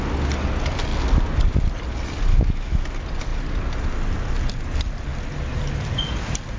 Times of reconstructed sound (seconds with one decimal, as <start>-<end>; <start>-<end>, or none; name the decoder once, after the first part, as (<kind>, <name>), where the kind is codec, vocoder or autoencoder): 2.3-2.8 (autoencoder, DAC-VAE)